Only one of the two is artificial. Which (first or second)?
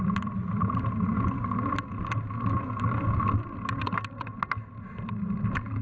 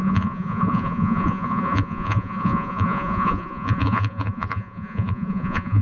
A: second